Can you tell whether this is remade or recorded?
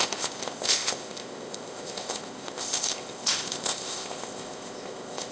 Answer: remade